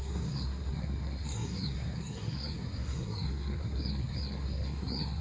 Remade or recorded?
remade